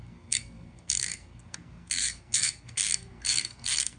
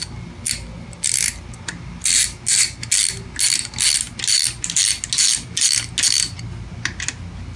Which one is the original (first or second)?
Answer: second